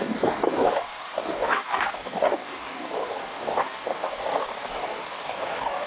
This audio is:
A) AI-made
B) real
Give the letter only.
A